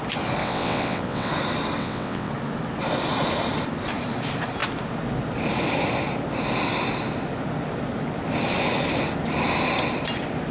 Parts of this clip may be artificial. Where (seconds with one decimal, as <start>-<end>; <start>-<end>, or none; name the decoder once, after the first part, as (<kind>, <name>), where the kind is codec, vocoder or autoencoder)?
0.4-1.3 (vocoder, WaveNeXt); 1.8-2.3

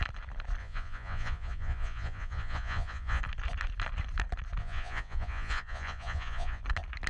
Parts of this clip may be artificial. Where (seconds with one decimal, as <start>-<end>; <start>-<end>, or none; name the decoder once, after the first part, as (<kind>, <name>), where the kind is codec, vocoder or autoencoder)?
0.6-3.2 (vocoder, Vocos); 4.6-6.6

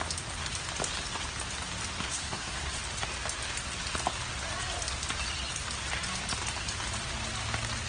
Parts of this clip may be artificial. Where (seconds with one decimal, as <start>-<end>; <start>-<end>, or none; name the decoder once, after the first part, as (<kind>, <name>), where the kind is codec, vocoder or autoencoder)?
2.1-2.8 (codec, SNAC)

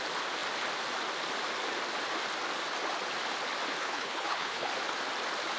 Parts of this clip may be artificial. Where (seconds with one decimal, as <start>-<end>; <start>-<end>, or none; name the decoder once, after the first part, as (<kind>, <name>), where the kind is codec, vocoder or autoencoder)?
3.8-4.7 (codec, HILCodec)

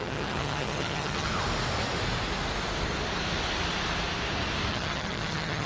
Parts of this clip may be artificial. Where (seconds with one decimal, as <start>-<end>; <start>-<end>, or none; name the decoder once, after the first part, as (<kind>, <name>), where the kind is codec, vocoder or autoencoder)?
0.0-1.3 (vocoder, HiFi-GAN); 4.7-5.7

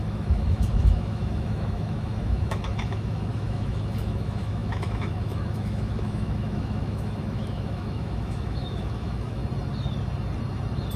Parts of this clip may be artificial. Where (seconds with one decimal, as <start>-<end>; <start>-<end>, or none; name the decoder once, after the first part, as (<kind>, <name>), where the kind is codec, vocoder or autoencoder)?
0.0-9.4 (autoencoder, DAC-VAE)

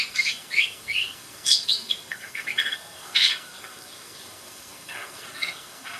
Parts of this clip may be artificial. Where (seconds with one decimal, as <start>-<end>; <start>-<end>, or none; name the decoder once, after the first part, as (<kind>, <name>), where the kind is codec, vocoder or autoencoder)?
0.0-6.0 (codec, SNAC)

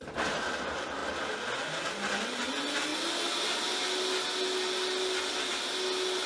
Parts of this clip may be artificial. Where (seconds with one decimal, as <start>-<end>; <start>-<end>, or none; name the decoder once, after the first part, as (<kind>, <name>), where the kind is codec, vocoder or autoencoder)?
none